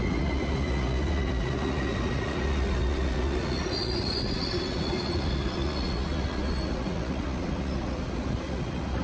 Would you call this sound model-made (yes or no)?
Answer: yes